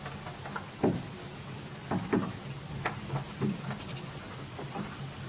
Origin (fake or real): real